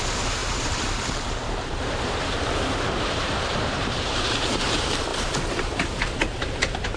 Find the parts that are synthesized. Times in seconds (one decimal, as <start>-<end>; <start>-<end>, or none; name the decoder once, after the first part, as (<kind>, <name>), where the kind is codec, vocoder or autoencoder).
0.0-7.0 (vocoder, BigVGAN v2)